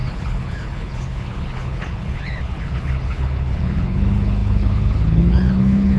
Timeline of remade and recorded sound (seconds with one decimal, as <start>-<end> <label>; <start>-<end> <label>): 0.0-6.0 remade

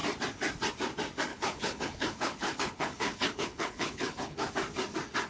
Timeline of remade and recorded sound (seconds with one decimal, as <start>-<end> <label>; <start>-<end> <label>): 0.0-1.3 recorded; 1.3-4.5 remade; 4.5-5.3 recorded

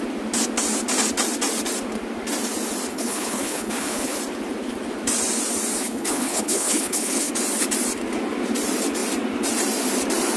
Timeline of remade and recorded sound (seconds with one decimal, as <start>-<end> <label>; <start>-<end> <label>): 0.0-2.9 recorded; 2.9-4.2 remade; 4.2-5.8 recorded; 5.8-7.3 remade; 7.3-10.4 recorded

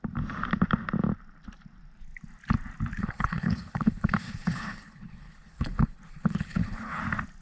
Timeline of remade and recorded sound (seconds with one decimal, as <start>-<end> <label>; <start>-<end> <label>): 0.0-3.0 recorded; 3.0-7.0 remade; 7.0-7.4 recorded

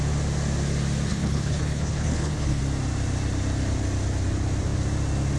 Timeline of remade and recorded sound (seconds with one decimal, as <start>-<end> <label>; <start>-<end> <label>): 0.0-1.1 recorded; 1.1-2.6 remade; 2.6-5.4 recorded

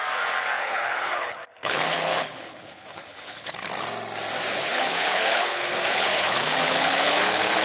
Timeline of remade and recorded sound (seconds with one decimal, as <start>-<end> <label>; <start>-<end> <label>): 0.0-0.6 recorded; 0.6-3.7 remade; 3.7-4.5 recorded; 4.5-7.6 remade

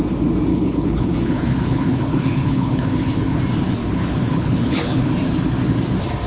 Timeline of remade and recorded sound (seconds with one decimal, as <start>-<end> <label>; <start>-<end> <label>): 0.0-0.5 recorded; 0.5-3.4 remade; 3.4-3.8 recorded; 3.8-5.1 remade; 5.1-6.3 recorded

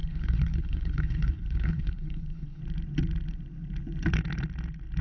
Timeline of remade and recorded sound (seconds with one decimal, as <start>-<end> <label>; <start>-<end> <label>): 0.0-2.6 remade; 2.6-5.0 recorded